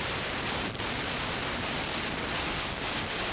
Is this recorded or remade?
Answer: recorded